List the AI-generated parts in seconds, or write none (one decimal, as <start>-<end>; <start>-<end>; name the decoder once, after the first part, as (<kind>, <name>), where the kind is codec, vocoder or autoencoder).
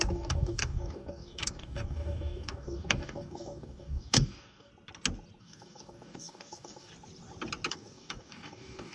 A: 0.0-4.7 (codec, DAC); 5.4-6.9; 7.7-8.9